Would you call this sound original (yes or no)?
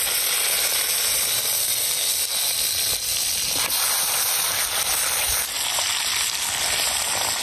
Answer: yes